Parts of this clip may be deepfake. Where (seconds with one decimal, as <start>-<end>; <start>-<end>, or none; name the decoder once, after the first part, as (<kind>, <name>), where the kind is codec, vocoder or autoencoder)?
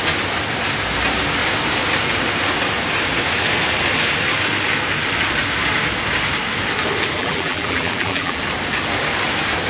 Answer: 7.2-8.4 (vocoder, BigVGAN v2)